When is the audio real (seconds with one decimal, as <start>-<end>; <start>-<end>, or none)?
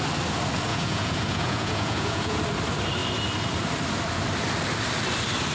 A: 0.0-0.7; 2.4-5.5